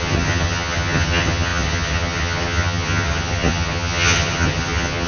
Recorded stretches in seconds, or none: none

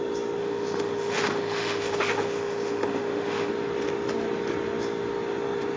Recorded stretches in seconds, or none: 0.0-0.4; 3.5-5.8